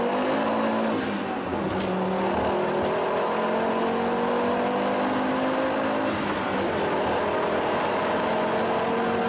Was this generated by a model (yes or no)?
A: no